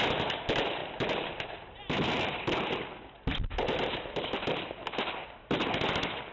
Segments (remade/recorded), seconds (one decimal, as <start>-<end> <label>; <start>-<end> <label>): 0.0-0.8 recorded; 0.8-4.6 remade; 4.6-6.3 recorded